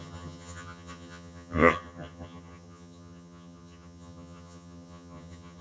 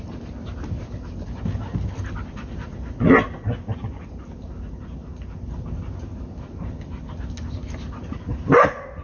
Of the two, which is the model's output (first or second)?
first